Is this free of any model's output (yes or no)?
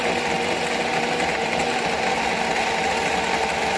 yes